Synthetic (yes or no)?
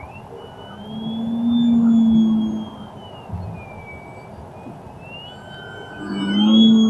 no